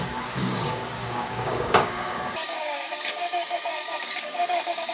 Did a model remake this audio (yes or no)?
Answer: yes